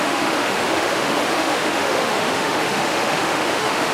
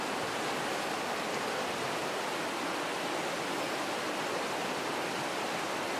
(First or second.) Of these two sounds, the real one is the second